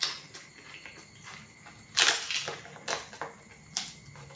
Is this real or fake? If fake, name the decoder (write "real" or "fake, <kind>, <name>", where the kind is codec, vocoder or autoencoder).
real